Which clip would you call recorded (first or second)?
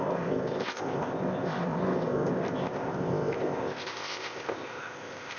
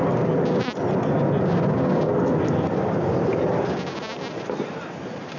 second